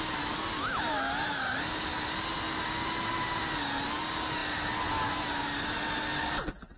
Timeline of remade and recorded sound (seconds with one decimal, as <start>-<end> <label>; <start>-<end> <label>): 0.0-6.8 recorded